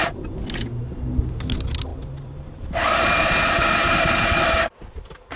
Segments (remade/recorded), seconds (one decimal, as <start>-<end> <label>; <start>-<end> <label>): 0.0-1.9 recorded; 1.9-5.4 remade